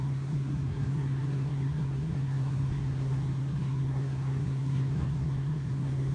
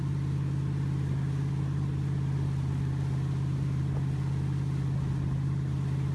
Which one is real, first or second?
second